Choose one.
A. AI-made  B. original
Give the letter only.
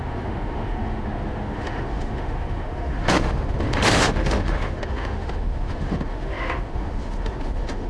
A